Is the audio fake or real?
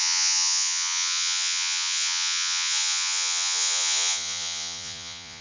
fake